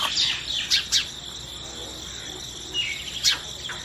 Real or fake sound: real